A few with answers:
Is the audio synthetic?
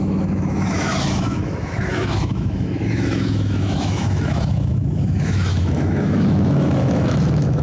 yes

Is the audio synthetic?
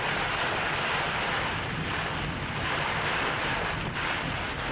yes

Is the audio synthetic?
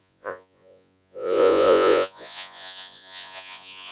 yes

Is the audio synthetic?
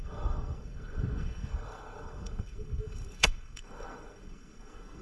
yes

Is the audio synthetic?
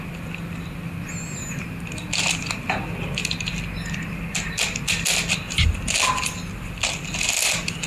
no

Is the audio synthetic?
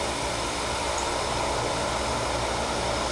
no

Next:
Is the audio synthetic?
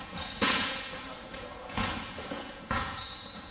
yes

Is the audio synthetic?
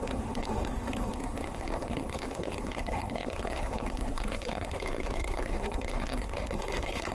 yes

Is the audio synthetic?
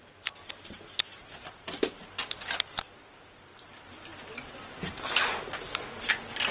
no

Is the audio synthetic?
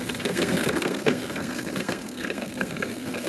yes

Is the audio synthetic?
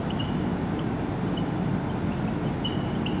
no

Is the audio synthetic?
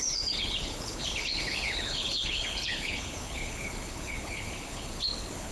yes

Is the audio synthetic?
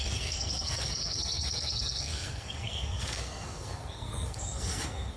yes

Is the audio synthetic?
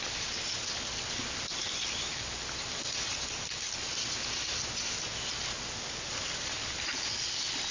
no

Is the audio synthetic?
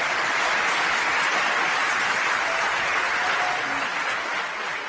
no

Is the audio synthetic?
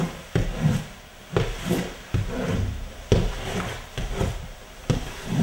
no